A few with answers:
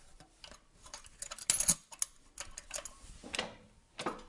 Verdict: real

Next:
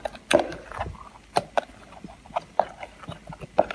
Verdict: real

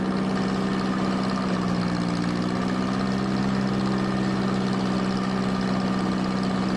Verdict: real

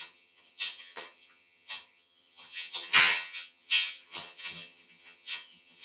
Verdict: fake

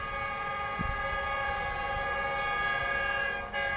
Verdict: real